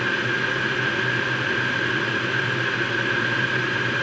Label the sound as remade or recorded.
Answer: recorded